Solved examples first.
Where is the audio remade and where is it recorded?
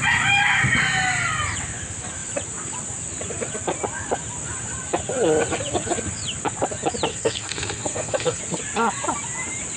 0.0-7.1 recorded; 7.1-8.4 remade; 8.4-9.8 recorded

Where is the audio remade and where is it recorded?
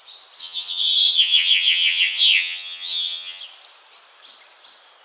0.0-0.4 recorded; 0.4-3.4 remade; 3.4-5.0 recorded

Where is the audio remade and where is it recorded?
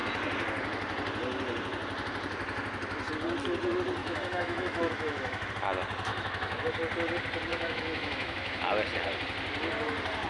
0.0-4.0 recorded; 4.0-5.5 remade; 5.5-6.1 recorded; 6.1-6.6 remade; 6.6-7.5 recorded; 7.5-8.6 remade; 8.6-10.3 recorded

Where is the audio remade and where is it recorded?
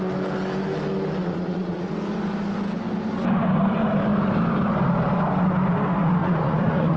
0.0-1.2 recorded; 1.2-1.9 remade; 1.9-6.2 recorded; 6.2-7.0 remade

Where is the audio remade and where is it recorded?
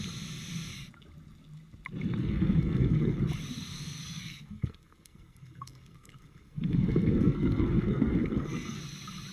0.0-2.2 recorded; 2.2-3.2 remade; 3.2-3.7 recorded; 3.7-8.8 remade; 8.8-9.3 recorded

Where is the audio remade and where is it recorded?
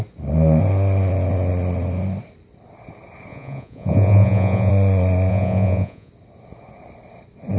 0.0-3.3 recorded; 3.3-4.7 remade; 4.7-5.3 recorded; 5.3-6.1 remade; 6.1-7.6 recorded